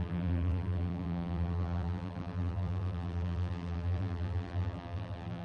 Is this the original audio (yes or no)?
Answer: no